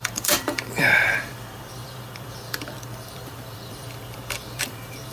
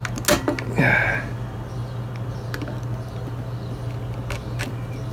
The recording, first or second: second